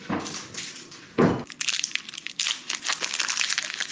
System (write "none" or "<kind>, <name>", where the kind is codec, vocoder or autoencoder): none